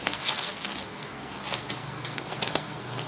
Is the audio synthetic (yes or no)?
yes